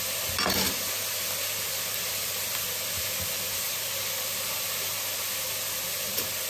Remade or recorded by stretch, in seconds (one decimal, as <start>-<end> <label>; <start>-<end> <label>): 0.0-6.5 recorded